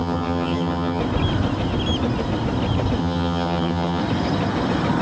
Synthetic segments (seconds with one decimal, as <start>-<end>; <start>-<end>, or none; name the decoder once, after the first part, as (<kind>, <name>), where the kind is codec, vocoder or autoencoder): 0.0-1.0 (vocoder, HiFi-GAN); 3.0-4.0